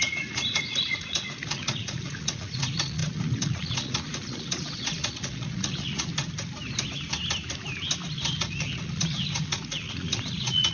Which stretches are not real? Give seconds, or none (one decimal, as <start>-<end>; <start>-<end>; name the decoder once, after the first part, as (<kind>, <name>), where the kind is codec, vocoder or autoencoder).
0.0-6.1 (vocoder, Vocos); 8.4-10.7